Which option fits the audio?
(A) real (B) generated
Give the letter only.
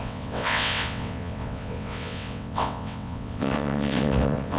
B